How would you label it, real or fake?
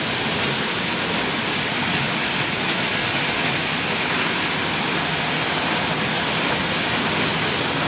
real